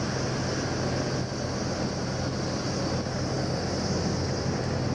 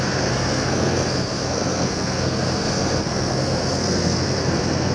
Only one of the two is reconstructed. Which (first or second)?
second